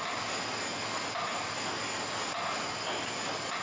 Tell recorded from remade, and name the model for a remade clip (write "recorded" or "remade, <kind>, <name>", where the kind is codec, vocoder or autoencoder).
recorded